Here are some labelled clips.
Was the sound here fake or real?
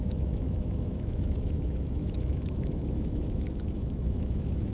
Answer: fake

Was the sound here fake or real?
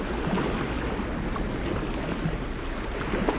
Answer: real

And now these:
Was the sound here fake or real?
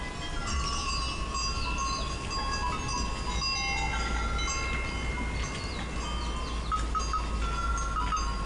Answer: real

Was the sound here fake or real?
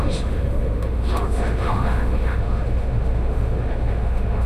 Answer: fake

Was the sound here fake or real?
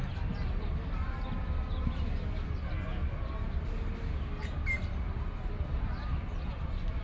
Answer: real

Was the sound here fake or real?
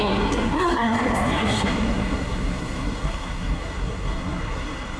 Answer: fake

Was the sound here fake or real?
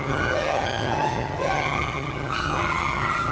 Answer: fake